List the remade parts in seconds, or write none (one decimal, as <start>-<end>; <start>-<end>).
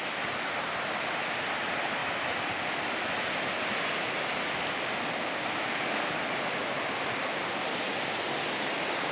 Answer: none